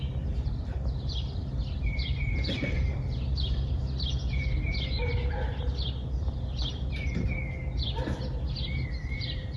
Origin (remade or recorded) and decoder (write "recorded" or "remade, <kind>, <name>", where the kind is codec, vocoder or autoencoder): recorded